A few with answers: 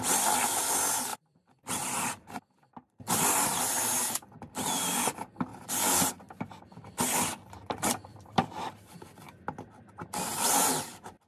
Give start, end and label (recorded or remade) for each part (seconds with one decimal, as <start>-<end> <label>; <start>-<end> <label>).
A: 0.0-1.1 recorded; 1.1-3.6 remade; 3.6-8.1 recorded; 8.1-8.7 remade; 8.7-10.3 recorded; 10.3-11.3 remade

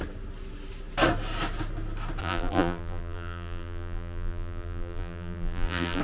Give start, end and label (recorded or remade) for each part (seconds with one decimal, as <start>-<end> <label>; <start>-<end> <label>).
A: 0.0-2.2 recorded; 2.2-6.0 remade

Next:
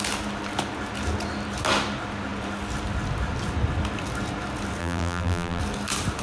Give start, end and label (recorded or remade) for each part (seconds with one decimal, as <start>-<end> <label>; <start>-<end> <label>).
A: 0.0-4.8 recorded; 4.8-5.6 remade; 5.6-6.2 recorded

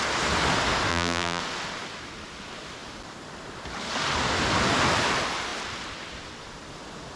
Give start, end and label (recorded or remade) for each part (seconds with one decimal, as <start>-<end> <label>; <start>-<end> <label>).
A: 0.0-0.9 recorded; 0.9-1.4 remade; 1.4-7.2 recorded